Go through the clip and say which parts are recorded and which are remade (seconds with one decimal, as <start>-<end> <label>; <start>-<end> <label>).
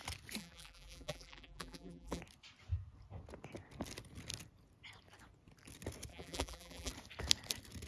0.0-0.4 recorded; 0.4-2.2 remade; 2.2-6.1 recorded; 6.1-6.9 remade; 6.9-7.9 recorded